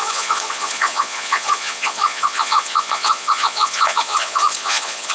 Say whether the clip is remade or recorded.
remade